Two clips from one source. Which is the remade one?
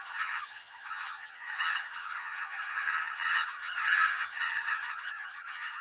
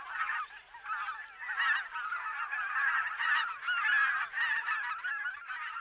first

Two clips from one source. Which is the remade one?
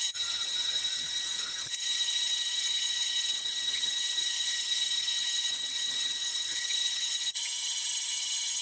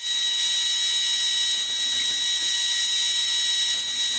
first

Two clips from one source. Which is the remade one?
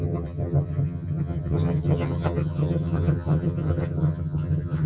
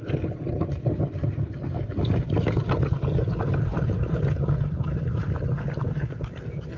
first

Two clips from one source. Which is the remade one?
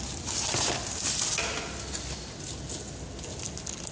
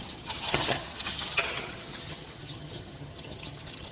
second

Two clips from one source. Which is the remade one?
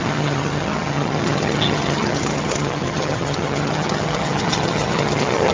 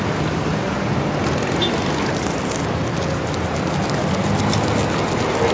first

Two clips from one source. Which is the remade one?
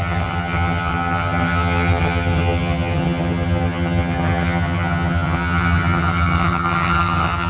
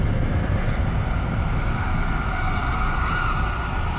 first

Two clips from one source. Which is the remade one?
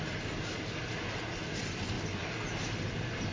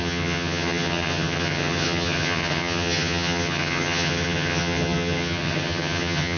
second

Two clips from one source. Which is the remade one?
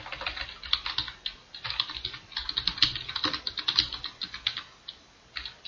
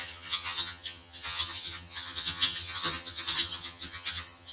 second